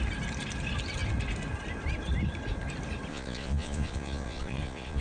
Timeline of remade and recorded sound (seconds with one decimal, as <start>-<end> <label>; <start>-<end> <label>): 0.0-3.1 recorded; 3.1-5.0 remade